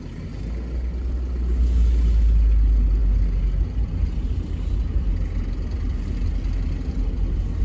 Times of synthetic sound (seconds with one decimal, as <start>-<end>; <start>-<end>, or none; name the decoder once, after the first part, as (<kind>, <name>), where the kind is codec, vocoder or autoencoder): none